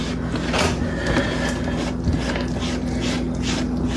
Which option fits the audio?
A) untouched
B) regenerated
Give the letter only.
A